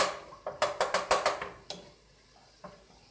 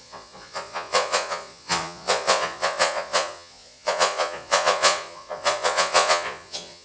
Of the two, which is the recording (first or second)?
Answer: first